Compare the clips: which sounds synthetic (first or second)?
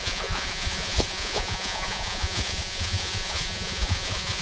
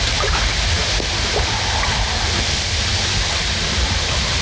first